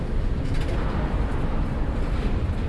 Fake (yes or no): no